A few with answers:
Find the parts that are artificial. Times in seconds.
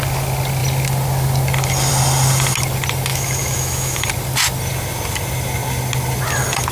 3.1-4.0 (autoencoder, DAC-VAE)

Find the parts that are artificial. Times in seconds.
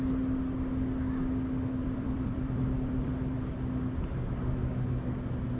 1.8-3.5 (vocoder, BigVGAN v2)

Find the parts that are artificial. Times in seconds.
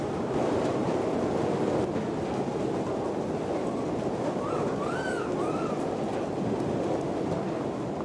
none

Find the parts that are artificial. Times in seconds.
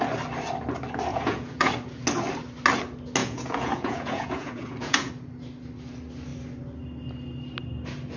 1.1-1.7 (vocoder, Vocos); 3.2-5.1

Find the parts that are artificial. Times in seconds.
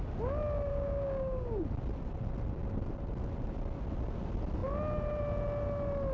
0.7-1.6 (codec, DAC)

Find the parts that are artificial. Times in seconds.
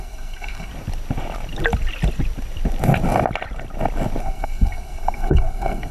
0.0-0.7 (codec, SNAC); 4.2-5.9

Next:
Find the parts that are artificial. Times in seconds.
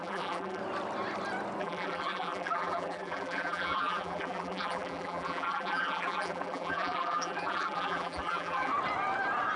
0.0-0.6 (vocoder, BigVGAN v2); 1.6-8.7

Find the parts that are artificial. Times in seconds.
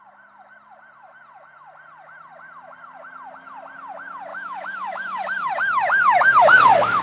4.3-7.0 (autoencoder, DAC-VAE)